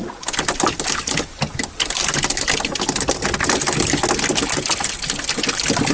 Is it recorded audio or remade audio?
recorded